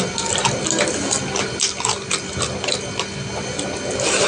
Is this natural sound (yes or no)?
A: yes